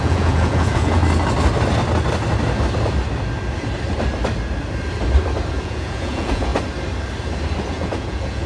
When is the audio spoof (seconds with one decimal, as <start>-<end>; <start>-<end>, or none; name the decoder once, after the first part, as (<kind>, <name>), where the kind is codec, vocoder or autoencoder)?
0.0-1.0 (vocoder, Vocos); 5.5-6.5; 7.7-8.5